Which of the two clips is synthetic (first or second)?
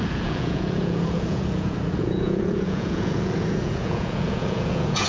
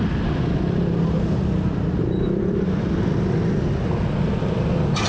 first